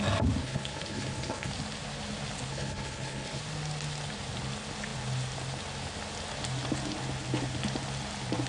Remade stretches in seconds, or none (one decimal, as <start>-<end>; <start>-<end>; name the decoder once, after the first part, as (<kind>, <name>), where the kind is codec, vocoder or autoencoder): 0.4-1.5 (codec, HILCodec); 2.5-3.4